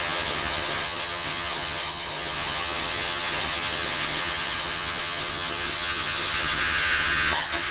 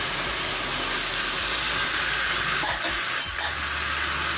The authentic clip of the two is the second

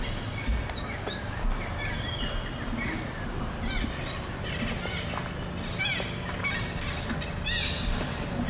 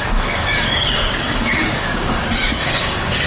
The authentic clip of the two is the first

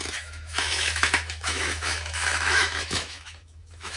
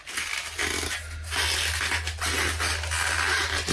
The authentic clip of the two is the second